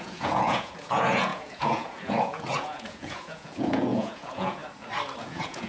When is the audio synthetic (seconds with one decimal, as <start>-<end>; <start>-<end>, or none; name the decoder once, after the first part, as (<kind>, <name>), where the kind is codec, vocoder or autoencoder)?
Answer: 0.0-4.6 (vocoder, Vocos); 5.2-5.7